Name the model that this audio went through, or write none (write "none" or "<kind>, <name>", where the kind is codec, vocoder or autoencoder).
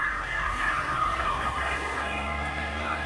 codec, SNAC